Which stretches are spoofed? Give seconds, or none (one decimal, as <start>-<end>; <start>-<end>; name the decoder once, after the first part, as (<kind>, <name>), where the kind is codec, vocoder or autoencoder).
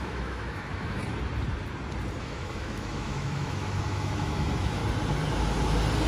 0.0-1.0 (autoencoder, DAC-VAE); 2.2-4.8